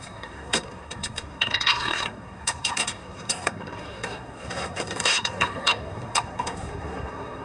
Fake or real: fake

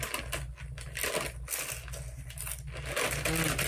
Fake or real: real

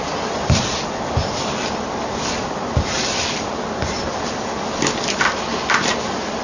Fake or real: fake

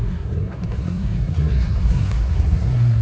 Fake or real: fake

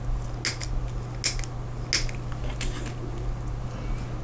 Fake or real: real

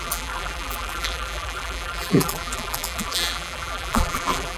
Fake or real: fake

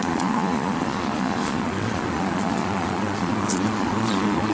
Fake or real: fake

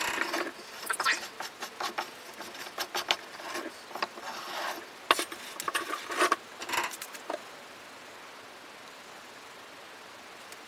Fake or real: real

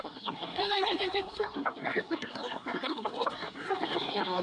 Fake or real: fake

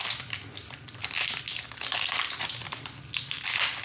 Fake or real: real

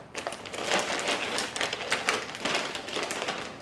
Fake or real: real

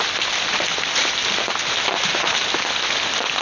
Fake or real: real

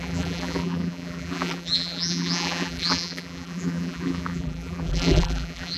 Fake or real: fake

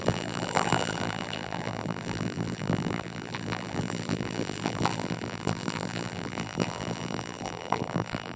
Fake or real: fake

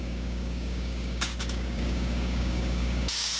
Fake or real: fake